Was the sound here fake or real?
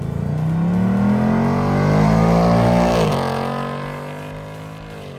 real